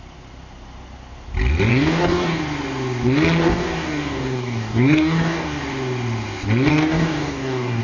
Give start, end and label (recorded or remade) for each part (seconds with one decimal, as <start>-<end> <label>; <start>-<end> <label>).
0.0-1.7 recorded; 1.7-2.4 remade; 2.4-3.5 recorded; 3.5-5.6 remade; 5.6-6.7 recorded; 6.7-7.8 remade